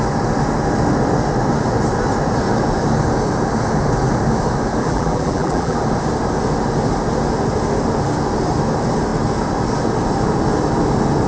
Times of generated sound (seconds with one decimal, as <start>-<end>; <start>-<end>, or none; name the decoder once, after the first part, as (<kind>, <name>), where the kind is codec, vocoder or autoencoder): 4.8-5.8 (vocoder, BigVGAN v2)